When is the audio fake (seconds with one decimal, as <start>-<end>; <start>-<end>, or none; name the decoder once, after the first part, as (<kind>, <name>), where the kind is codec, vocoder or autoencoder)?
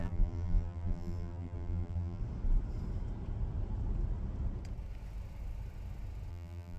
0.0-2.2 (vocoder, BigVGAN v2); 6.3-6.8